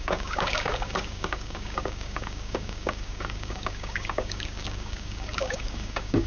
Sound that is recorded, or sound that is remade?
remade